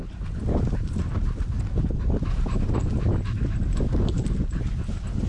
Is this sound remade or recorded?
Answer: recorded